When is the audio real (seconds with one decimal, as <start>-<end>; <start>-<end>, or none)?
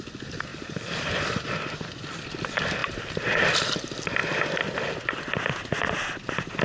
0.0-0.5; 1.6-2.8; 3.5-6.6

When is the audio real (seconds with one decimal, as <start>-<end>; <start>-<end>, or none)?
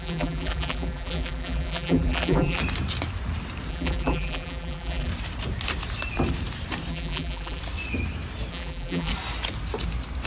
2.6-3.7; 5.1-6.9; 7.6-8.5; 9.1-10.3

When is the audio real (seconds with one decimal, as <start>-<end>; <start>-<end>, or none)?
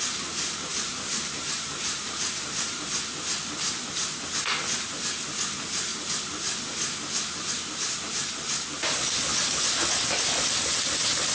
0.0-0.7; 2.9-11.3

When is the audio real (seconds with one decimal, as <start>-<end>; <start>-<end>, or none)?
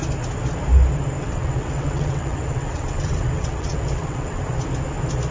0.0-1.2; 4.4-5.3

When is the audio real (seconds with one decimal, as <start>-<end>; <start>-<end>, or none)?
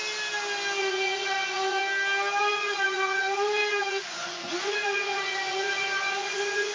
0.0-0.8; 1.8-2.4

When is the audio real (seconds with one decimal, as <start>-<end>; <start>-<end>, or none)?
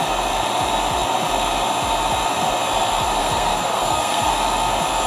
0.0-3.2; 4.3-5.1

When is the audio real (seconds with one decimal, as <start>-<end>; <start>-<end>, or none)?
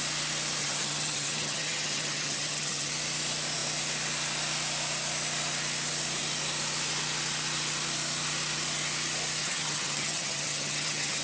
0.0-0.6; 2.9-9.4